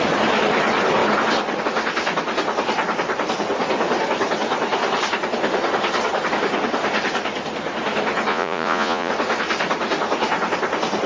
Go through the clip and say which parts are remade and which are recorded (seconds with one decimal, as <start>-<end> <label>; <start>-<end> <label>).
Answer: 0.0-8.3 recorded; 8.3-9.1 remade; 9.1-11.1 recorded